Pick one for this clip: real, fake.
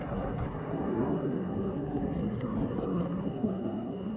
fake